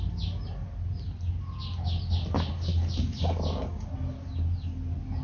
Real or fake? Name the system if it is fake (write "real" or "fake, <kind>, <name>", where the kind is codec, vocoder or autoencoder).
real